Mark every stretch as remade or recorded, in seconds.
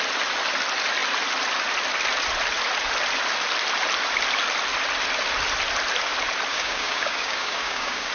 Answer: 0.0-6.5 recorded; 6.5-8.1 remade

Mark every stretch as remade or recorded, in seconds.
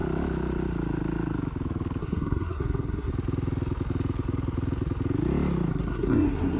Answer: 0.0-2.0 recorded; 2.0-3.1 remade; 3.1-5.7 recorded; 5.7-6.6 remade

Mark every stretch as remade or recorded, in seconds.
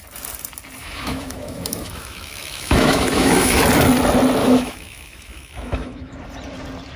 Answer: 0.0-0.8 recorded; 0.8-3.6 remade; 3.6-4.4 recorded; 4.4-6.2 remade; 6.2-7.0 recorded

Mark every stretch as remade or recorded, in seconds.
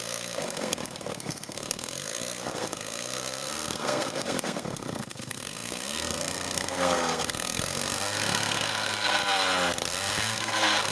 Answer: 0.0-9.2 remade; 9.2-9.9 recorded; 9.9-10.9 remade